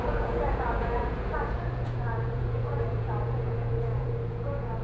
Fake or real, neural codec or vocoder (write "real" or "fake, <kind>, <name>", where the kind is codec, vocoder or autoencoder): fake, vocoder, Vocos